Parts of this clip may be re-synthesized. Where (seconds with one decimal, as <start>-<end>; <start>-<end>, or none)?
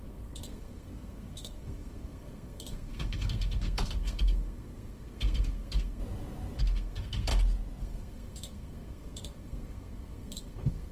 0.0-6.0; 6.6-7.3; 7.8-10.9